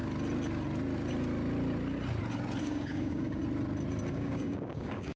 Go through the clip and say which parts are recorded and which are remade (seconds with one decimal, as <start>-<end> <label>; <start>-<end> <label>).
0.0-2.6 recorded; 2.6-3.4 remade; 3.4-4.1 recorded; 4.1-5.2 remade